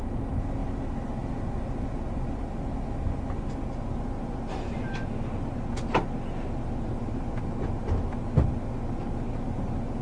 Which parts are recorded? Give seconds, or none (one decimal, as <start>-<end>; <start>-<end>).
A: 0.0-10.0